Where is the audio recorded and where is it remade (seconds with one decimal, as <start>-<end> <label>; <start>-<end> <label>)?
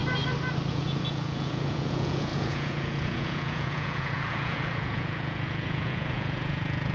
0.0-0.7 recorded; 0.7-6.9 remade